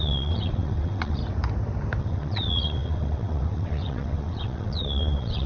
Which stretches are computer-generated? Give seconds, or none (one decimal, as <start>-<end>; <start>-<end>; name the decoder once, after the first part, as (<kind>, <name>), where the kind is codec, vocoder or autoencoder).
0.0-1.2 (vocoder, WaveNeXt); 2.0-5.5